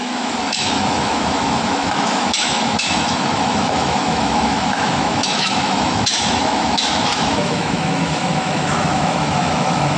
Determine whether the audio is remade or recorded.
remade